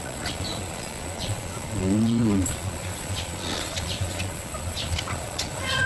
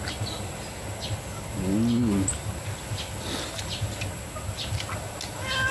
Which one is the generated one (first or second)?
first